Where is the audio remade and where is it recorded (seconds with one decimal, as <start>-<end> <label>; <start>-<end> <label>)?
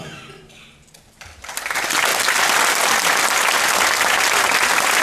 0.0-5.0 recorded